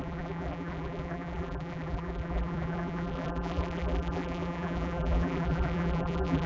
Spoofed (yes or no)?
yes